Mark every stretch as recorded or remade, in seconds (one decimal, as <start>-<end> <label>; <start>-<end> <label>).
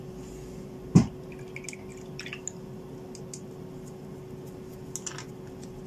0.0-5.9 recorded